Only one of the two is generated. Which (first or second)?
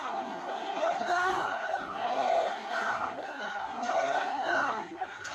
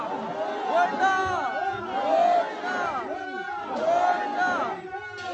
first